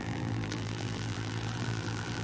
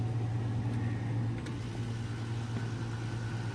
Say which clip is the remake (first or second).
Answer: first